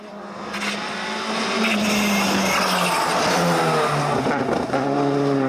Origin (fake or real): real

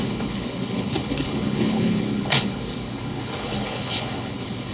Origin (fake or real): fake